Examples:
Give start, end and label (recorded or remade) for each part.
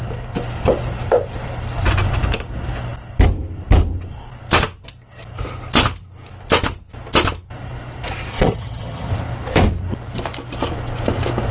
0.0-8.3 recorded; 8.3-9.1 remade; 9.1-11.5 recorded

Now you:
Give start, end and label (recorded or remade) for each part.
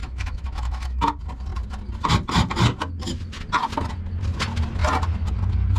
0.0-1.1 remade; 1.1-5.8 recorded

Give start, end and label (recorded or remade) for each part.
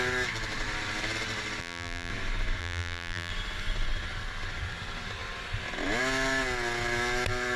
0.0-1.6 recorded; 1.6-2.1 remade; 2.1-2.6 recorded; 2.6-3.3 remade; 3.3-7.6 recorded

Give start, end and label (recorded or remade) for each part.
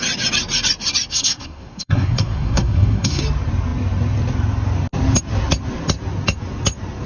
0.0-1.1 recorded; 1.1-3.2 remade; 3.2-7.1 recorded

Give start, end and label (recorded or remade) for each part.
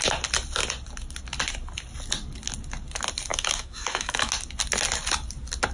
0.0-3.3 recorded; 3.3-4.3 remade; 4.3-5.7 recorded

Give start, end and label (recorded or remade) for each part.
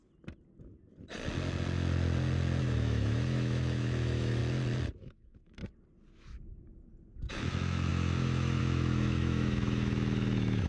0.0-2.6 recorded; 2.6-4.4 remade; 4.4-5.0 recorded; 5.0-5.6 remade; 5.6-7.3 recorded; 7.3-10.7 remade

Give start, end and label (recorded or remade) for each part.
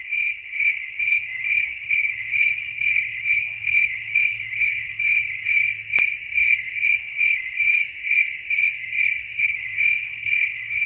0.0-5.6 remade; 5.6-7.0 recorded; 7.0-7.8 remade; 7.8-9.4 recorded; 9.4-10.9 remade